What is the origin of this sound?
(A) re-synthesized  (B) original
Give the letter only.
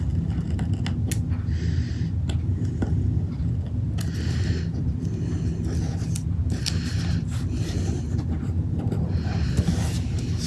B